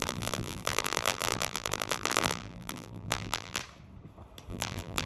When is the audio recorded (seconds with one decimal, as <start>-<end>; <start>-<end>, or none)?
3.6-4.5